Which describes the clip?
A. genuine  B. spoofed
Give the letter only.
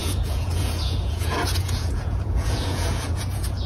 B